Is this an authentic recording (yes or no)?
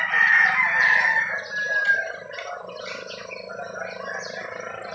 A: yes